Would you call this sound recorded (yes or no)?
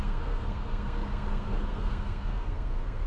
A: no